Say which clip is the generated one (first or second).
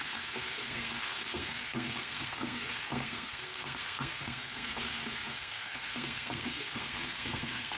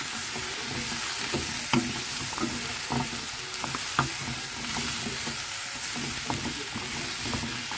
first